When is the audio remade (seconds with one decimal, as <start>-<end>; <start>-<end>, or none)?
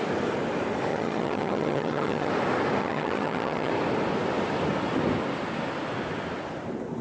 0.9-2.3; 2.8-3.7